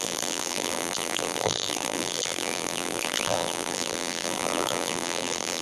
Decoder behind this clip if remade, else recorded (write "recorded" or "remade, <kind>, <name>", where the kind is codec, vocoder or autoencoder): remade, vocoder, BigVGAN v2